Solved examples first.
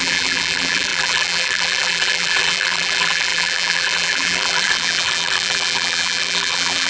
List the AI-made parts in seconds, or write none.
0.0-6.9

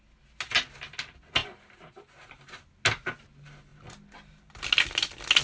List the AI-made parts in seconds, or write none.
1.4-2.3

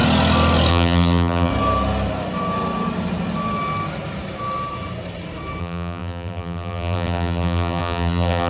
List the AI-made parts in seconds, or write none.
0.7-1.5; 5.6-8.5

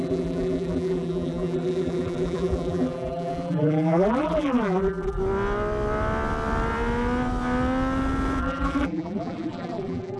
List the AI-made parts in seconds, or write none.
0.0-5.2; 8.4-10.2

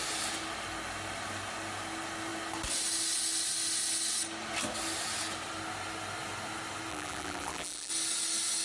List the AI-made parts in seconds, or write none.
6.9-7.9

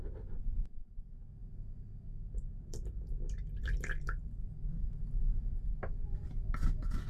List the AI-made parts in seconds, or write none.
0.0-1.4; 2.3-7.1

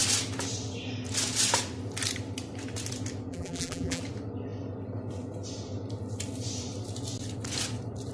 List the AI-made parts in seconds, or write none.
3.3-4.0